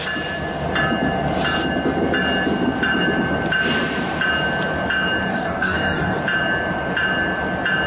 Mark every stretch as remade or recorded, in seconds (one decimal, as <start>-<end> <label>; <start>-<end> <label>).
0.0-5.3 recorded; 5.3-6.2 remade; 6.2-7.9 recorded